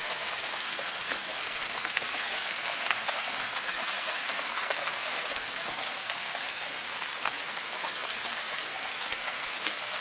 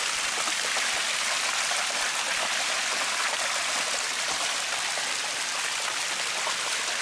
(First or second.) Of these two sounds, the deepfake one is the first